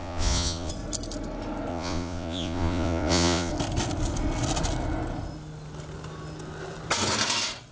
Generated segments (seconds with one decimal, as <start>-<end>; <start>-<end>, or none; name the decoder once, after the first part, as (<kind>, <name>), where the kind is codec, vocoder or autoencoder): 0.0-0.7 (vocoder, Vocos); 1.7-3.5